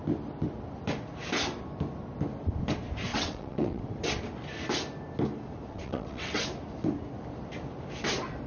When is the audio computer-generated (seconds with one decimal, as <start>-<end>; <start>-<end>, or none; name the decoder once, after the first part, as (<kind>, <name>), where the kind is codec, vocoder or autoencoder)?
3.1-3.8 (vocoder, WaveNeXt); 5.7-6.4